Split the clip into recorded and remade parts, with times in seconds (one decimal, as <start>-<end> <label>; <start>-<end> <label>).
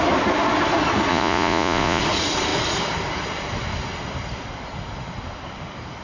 0.0-1.1 recorded; 1.1-2.0 remade; 2.0-6.0 recorded